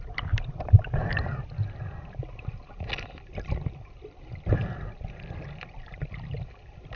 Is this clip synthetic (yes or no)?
no